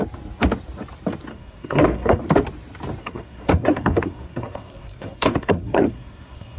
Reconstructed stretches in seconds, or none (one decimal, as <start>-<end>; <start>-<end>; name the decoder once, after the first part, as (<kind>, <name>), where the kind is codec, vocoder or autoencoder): 1.3-2.2 (codec, SNAC); 3.0-6.6